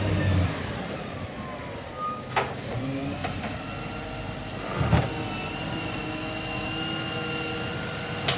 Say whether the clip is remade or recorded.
recorded